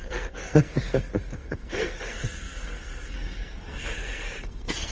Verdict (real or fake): fake